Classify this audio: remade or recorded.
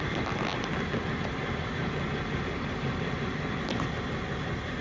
recorded